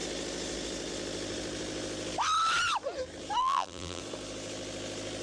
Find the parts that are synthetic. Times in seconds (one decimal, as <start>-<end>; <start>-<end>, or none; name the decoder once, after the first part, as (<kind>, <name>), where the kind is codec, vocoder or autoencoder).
3.4-4.0 (vocoder, BigVGAN v2)